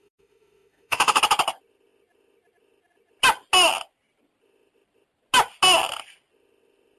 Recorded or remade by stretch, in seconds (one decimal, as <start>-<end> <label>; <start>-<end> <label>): 0.0-1.2 remade; 1.2-7.0 recorded